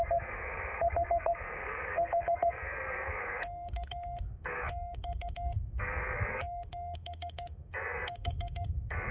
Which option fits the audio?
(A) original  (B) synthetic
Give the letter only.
B